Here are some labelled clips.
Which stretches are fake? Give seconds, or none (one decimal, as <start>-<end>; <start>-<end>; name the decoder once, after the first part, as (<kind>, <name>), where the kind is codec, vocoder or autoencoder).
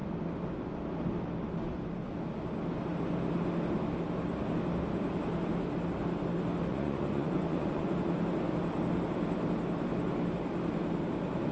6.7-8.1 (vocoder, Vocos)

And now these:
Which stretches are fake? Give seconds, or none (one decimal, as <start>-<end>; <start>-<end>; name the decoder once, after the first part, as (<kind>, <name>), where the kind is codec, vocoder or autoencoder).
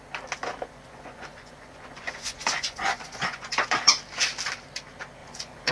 0.5-3.9 (vocoder, Vocos); 5.2-5.7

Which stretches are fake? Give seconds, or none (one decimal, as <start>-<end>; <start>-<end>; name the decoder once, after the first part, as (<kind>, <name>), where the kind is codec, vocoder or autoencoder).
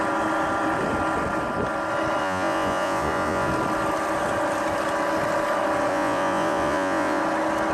2.2-3.5 (vocoder, Vocos); 5.9-7.2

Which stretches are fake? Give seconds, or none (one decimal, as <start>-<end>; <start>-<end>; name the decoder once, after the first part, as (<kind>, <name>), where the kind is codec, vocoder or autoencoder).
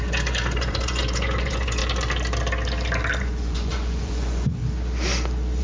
0.0-1.8 (vocoder, Vocos); 3.2-4.6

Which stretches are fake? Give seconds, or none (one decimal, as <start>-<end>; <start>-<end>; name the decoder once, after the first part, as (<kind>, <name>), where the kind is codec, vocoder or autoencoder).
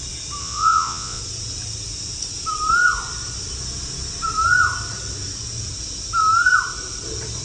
0.4-1.2 (vocoder, Vocos)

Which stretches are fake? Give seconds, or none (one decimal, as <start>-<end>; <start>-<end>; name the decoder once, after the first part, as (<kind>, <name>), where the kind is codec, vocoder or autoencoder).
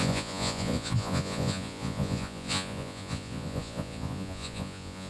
0.0-5.1 (vocoder, Vocos)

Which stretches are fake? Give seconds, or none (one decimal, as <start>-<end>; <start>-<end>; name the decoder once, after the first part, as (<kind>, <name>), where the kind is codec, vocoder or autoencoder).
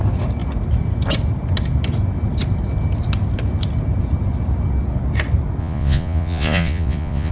5.6-7.3 (vocoder, Vocos)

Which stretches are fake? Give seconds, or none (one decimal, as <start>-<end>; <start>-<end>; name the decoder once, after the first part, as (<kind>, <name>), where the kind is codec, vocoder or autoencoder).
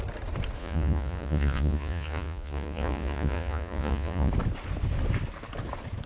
0.6-4.3 (vocoder, Vocos)